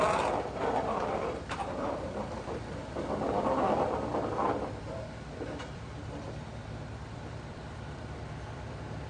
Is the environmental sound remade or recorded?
remade